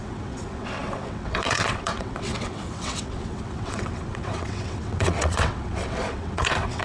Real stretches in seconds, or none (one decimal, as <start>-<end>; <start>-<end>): none